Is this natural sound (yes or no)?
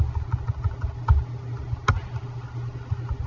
yes